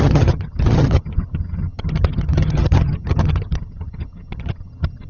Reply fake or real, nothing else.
fake